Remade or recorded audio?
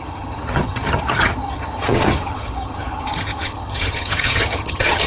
remade